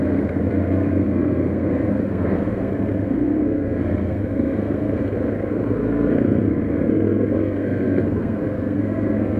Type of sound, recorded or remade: remade